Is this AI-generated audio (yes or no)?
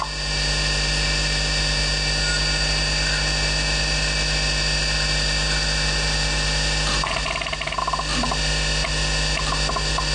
no